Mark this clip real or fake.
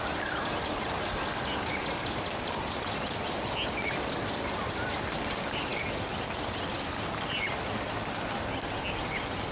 real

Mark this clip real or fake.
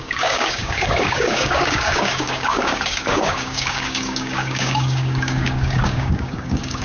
fake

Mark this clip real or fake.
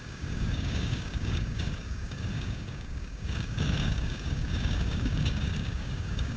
fake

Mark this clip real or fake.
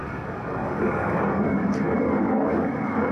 fake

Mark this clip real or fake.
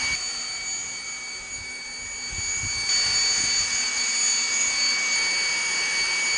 real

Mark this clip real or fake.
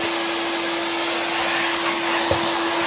real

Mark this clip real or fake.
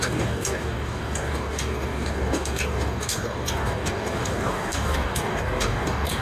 fake